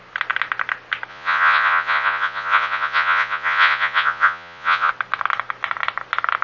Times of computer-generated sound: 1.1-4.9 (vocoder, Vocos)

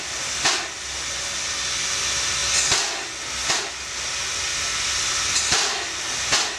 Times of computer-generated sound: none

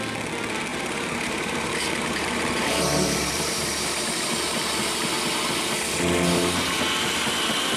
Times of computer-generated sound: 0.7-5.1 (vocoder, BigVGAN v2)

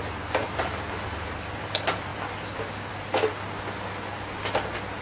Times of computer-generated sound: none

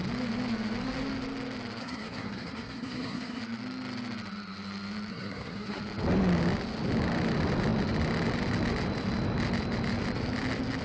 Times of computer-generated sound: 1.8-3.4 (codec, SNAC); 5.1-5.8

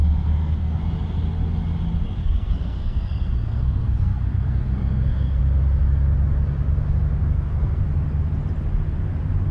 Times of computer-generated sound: 0.0-0.8 (codec, SNAC); 2.2-5.4; 7.2-7.8